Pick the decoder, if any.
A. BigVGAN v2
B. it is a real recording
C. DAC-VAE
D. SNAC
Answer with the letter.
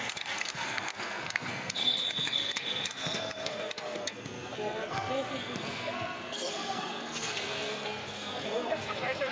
D